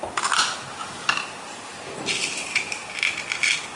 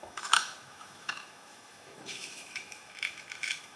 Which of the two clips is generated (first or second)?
second